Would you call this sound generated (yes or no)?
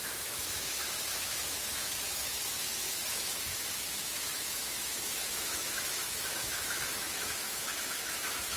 yes